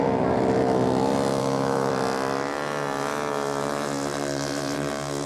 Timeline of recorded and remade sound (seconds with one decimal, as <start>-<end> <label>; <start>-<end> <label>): 0.0-1.4 recorded; 1.4-1.9 remade; 1.9-5.3 recorded